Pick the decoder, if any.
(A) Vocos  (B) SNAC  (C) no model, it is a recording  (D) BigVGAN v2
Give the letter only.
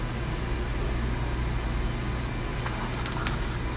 C